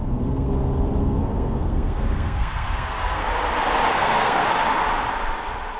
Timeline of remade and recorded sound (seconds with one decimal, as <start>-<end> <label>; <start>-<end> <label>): 0.0-0.5 remade; 0.5-1.0 recorded; 1.0-3.3 remade; 3.3-3.9 recorded; 3.9-4.4 remade; 4.4-5.8 recorded